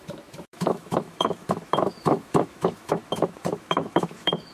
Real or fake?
fake